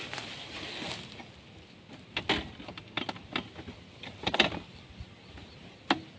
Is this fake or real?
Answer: real